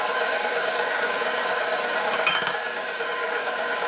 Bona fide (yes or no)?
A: no